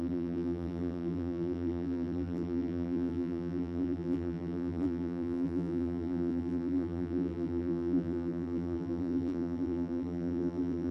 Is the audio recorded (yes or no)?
no